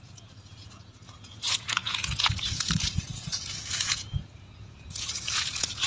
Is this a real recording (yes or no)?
no